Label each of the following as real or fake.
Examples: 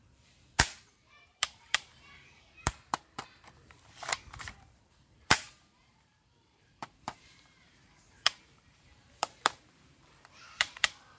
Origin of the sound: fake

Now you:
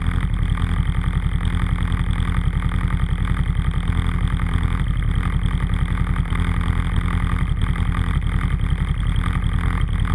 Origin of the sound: real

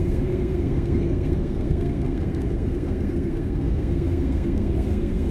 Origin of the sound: fake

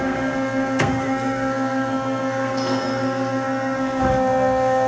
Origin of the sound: fake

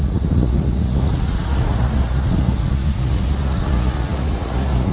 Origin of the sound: fake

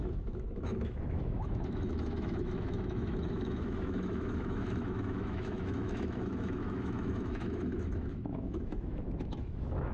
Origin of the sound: fake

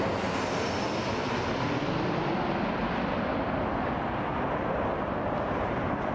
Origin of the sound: real